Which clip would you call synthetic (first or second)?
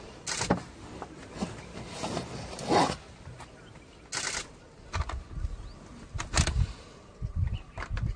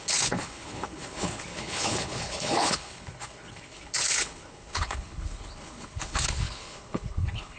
second